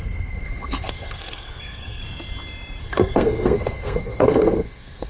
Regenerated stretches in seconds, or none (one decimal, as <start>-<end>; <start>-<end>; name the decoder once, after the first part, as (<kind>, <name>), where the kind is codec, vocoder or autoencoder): 0.0-2.0 (codec, SNAC); 2.8-5.1